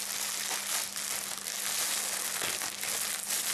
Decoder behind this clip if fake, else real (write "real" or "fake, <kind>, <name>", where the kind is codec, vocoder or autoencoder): real